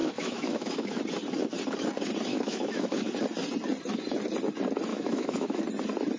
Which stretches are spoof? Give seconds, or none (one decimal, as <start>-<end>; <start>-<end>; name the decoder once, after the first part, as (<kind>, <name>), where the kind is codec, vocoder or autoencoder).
0.0-1.0 (autoencoder, DAC-VAE); 2.3-2.9; 4.9-5.6

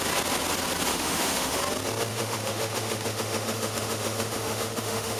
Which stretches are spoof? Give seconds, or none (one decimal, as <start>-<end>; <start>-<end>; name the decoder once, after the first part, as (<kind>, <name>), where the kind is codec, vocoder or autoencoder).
0.9-1.6 (autoencoder, DAC-VAE); 2.1-5.2

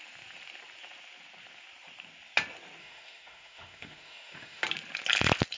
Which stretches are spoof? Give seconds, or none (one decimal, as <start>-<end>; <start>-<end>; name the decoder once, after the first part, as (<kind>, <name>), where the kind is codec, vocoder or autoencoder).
2.8-4.6 (autoencoder, DAC-VAE)

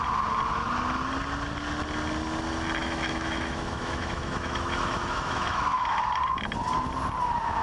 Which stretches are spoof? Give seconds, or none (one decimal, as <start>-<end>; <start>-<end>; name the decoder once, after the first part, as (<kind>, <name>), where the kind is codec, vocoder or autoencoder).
2.8-6.0 (autoencoder, DAC-VAE)

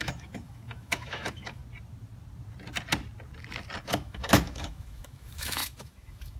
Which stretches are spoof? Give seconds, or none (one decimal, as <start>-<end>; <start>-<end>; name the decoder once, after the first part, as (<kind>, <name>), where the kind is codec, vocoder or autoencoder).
0.0-1.6 (autoencoder, DAC-VAE); 3.8-6.4

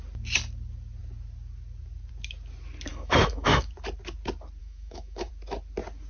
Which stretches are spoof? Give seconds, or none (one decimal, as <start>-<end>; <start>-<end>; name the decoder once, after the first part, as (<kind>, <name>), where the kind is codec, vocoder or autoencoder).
2.9-3.7 (autoencoder, DAC-VAE); 4.6-5.3

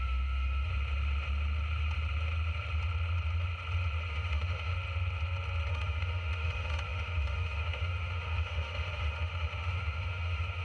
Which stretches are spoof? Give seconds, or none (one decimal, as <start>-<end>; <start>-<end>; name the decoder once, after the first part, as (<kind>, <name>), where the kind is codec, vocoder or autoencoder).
0.0-0.7 (autoencoder, DAC-VAE); 4.1-4.7; 5.7-10.6